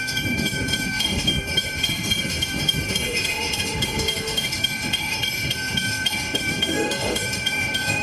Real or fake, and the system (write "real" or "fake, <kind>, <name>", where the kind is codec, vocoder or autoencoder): fake, autoencoder, DAC-VAE